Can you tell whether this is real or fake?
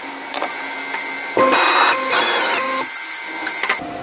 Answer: real